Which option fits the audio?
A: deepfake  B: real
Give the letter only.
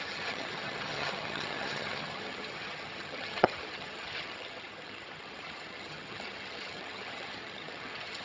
A